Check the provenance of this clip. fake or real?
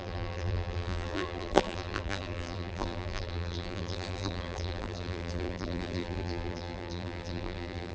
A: fake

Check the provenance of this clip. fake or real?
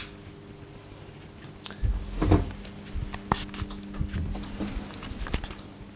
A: real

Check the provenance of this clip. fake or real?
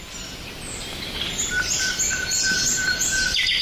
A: real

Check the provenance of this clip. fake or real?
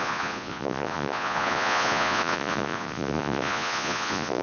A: fake